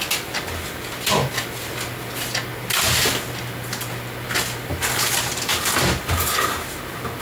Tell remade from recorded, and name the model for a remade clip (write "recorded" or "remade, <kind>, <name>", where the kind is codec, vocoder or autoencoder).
recorded